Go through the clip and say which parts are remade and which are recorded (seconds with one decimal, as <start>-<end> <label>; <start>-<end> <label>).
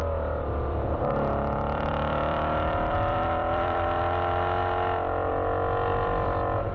0.0-4.0 remade; 4.0-5.9 recorded; 5.9-6.7 remade